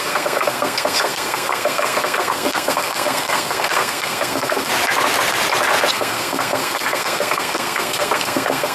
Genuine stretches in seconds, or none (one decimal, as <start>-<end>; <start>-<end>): 4.7-5.9